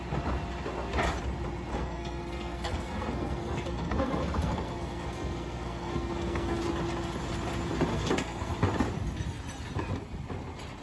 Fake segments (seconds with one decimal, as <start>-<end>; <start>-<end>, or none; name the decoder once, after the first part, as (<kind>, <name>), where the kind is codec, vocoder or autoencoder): 1.7-6.6 (codec, SNAC); 7.9-8.5

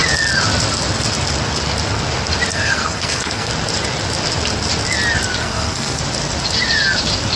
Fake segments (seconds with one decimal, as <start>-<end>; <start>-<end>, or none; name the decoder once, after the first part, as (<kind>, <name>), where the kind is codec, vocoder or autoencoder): 2.5-3.5 (codec, SNAC); 5.4-6.0